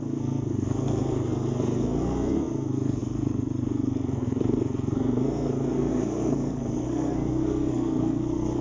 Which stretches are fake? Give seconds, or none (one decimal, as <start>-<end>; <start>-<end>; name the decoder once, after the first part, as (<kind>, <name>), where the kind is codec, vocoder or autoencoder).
0.0-8.6 (codec, SNAC)